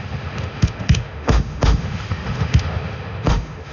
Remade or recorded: remade